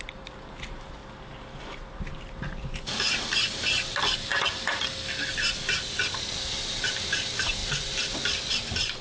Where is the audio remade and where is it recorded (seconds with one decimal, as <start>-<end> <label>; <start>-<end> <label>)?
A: 0.0-1.0 remade; 1.0-1.6 recorded; 1.6-4.3 remade; 4.3-5.4 recorded; 5.4-7.6 remade; 7.6-8.5 recorded; 8.5-9.0 remade

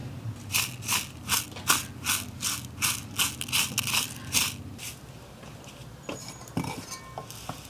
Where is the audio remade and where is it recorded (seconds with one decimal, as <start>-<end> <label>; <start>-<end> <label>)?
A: 0.0-0.5 remade; 0.5-7.7 recorded

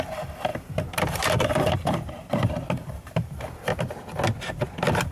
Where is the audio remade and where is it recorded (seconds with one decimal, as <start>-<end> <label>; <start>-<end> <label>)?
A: 0.0-0.5 recorded; 0.5-3.6 remade; 3.6-5.1 recorded

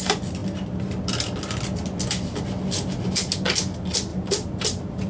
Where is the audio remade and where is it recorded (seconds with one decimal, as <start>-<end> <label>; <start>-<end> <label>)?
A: 0.0-4.1 recorded; 4.1-5.1 remade

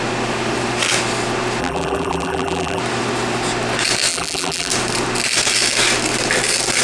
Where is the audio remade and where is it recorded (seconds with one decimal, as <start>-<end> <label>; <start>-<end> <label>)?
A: 0.0-1.6 recorded; 1.6-2.8 remade; 2.8-4.1 recorded; 4.1-4.7 remade; 4.7-6.8 recorded

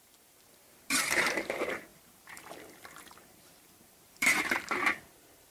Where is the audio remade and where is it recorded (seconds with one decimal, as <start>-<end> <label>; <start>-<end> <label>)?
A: 0.0-5.5 remade